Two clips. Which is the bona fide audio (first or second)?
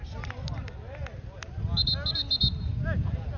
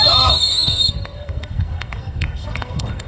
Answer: first